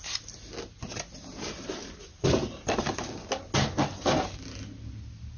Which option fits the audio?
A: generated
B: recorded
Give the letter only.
B